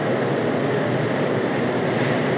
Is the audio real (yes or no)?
yes